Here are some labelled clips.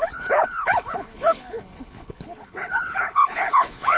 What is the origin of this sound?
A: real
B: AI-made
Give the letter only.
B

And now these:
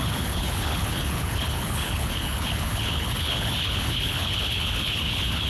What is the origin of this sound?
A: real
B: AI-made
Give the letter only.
B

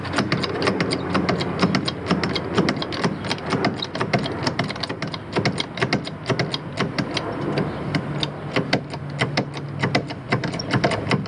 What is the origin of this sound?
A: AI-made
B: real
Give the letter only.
B